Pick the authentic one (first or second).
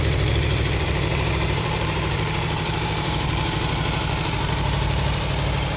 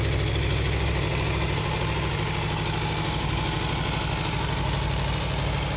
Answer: second